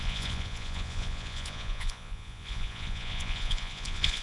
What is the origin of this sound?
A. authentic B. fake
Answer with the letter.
B